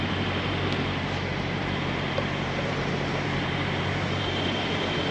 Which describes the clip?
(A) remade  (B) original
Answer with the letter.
A